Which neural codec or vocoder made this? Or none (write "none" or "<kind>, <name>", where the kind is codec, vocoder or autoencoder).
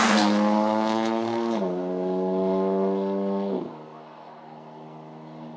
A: codec, SNAC